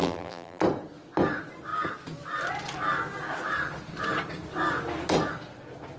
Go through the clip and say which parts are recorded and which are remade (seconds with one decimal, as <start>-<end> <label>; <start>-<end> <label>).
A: 0.0-0.6 remade; 0.6-6.0 recorded